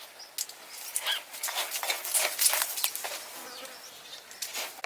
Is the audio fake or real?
real